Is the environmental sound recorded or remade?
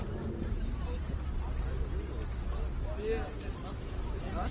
recorded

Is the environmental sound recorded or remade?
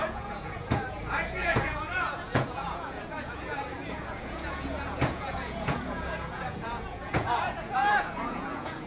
remade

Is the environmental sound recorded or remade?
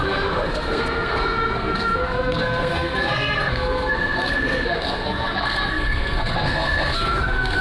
remade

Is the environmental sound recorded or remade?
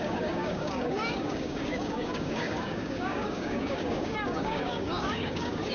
remade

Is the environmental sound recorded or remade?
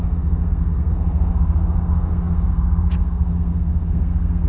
remade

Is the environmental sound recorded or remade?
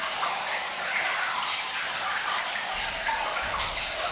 recorded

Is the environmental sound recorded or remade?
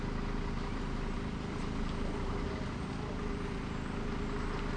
recorded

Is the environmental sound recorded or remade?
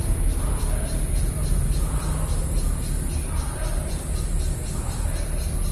recorded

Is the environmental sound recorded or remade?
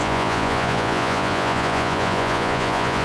remade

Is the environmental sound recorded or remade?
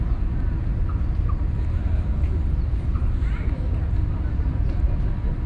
recorded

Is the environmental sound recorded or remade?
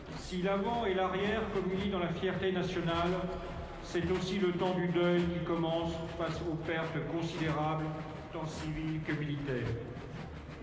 recorded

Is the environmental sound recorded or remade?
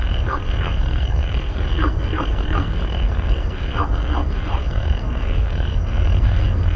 remade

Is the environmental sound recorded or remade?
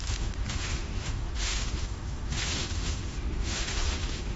remade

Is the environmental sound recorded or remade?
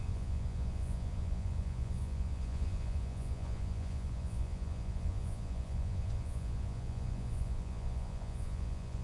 remade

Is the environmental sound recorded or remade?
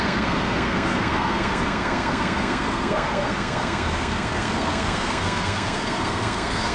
remade